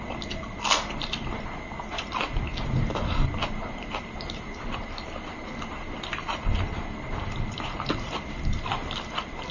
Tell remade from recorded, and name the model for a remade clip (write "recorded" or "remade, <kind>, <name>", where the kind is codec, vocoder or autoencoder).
recorded